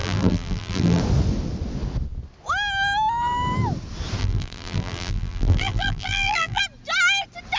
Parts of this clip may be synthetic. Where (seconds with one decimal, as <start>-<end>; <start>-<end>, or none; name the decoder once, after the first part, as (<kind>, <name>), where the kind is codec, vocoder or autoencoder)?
0.0-1.0 (vocoder, BigVGAN v2); 4.2-6.6